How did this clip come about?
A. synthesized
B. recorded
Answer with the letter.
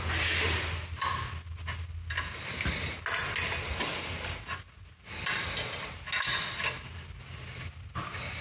B